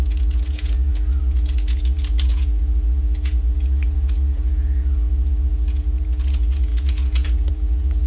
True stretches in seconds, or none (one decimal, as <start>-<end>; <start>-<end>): none